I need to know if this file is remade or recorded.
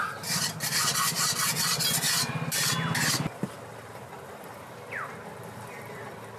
recorded